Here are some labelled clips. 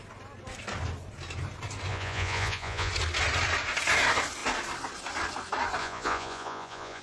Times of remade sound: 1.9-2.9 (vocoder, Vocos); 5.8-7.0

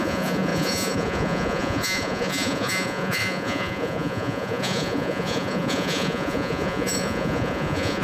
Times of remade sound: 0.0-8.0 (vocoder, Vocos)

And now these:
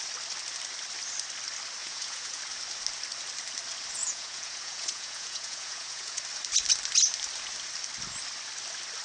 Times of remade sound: 1.8-2.4 (vocoder, Vocos); 4.0-6.2

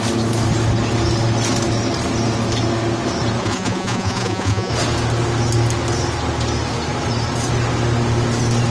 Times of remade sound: 3.4-4.7 (vocoder, Vocos)

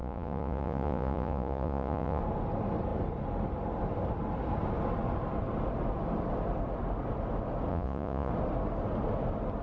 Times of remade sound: 0.0-2.2 (vocoder, Vocos); 7.7-8.3

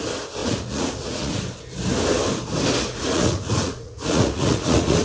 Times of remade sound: 0.4-1.4 (vocoder, Vocos); 2.9-5.0